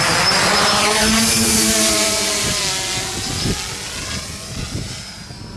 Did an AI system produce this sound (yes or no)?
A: no